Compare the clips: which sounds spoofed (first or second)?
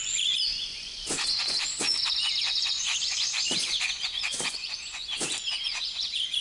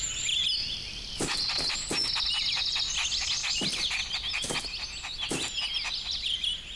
first